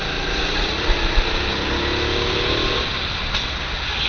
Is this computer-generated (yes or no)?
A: no